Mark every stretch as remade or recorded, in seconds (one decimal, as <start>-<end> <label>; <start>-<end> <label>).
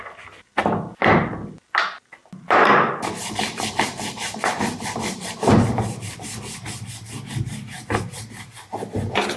0.0-2.2 recorded; 2.2-6.4 remade; 6.4-7.5 recorded; 7.5-8.1 remade; 8.1-9.4 recorded